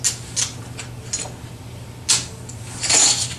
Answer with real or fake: real